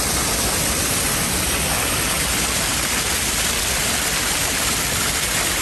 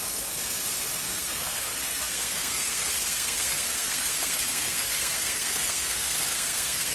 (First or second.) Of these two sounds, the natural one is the first